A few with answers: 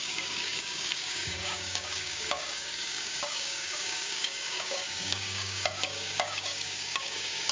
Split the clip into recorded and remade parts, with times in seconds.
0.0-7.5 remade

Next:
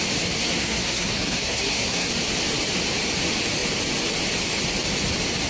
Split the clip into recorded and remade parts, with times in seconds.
0.0-0.4 recorded; 0.4-2.1 remade; 2.1-5.5 recorded

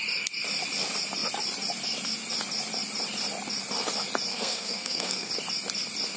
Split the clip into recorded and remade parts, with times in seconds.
0.0-4.3 recorded; 4.3-5.3 remade; 5.3-6.2 recorded

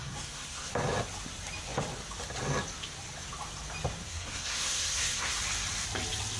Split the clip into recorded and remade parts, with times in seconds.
0.0-0.7 remade; 0.7-4.1 recorded; 4.1-5.4 remade; 5.4-6.4 recorded